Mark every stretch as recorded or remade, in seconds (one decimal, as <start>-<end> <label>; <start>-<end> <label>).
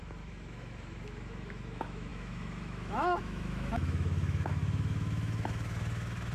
0.0-6.3 remade